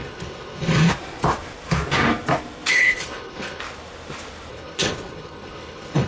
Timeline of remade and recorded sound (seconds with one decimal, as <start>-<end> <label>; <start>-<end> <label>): 0.0-0.9 remade; 0.9-2.7 recorded; 2.7-3.6 remade; 3.6-4.5 recorded; 4.5-6.1 remade